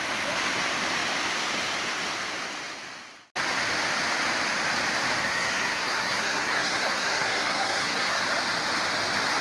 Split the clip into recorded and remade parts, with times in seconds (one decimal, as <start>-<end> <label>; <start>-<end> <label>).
0.0-5.2 recorded; 5.2-8.2 remade; 8.2-9.4 recorded